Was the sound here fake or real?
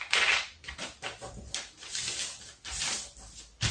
real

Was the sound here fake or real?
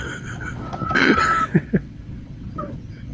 fake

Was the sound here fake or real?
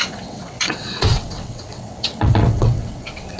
fake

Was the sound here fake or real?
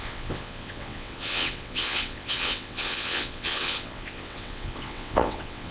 fake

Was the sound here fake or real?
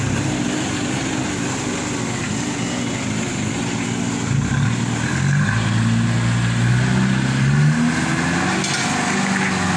real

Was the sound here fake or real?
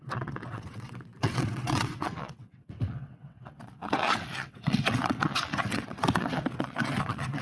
fake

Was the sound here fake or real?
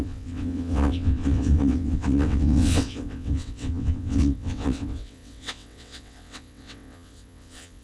fake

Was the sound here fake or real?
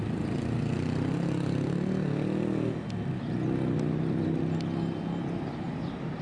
real